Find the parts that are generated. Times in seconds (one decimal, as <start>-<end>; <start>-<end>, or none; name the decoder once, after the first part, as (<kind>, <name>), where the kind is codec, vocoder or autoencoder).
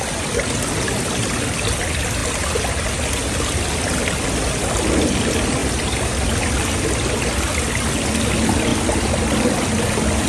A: none